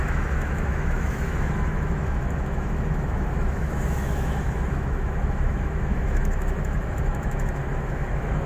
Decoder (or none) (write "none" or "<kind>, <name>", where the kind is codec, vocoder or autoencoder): autoencoder, DAC-VAE